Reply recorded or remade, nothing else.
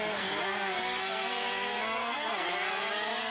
remade